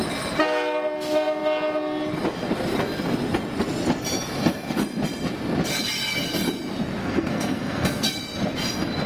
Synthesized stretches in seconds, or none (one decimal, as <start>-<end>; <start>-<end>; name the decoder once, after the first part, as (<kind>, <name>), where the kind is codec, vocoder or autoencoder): 7.0-8.2 (codec, SNAC)